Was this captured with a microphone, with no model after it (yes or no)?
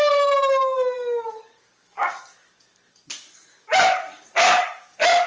no